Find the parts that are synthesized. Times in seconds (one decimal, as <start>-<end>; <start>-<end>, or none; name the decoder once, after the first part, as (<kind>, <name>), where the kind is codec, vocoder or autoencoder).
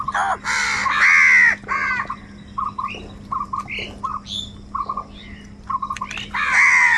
none